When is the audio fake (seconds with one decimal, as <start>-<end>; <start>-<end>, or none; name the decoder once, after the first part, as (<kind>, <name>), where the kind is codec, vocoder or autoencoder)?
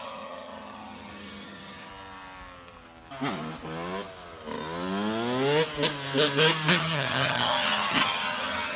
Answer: 0.0-1.9 (vocoder, HiFi-GAN); 6.7-8.8